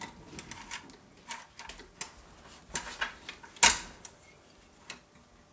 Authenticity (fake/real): real